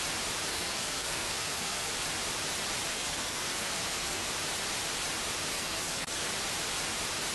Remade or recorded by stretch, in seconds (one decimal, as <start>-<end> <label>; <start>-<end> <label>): 0.0-0.5 recorded; 0.5-1.9 remade; 1.9-2.9 recorded; 2.9-4.3 remade; 4.3-5.5 recorded; 5.5-6.3 remade; 6.3-7.3 recorded